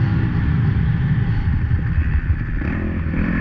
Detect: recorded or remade recorded